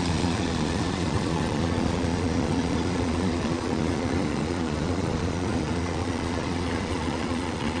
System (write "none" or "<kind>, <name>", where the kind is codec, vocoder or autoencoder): vocoder, Vocos